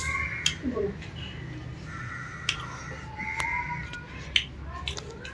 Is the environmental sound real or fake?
real